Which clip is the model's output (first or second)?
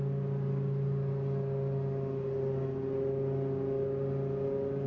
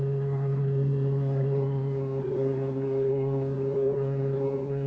second